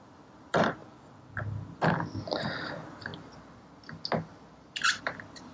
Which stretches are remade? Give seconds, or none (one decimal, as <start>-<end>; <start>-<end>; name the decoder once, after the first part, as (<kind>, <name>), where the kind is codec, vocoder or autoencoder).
0.0-0.8 (vocoder, BigVGAN v2); 1.9-3.1; 5.0-5.5